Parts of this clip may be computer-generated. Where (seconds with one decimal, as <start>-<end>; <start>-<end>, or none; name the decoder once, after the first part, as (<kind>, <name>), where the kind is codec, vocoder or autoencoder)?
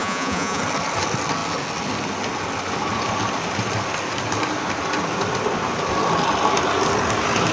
0.0-0.6 (vocoder, Vocos)